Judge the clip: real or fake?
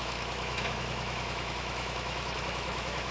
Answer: fake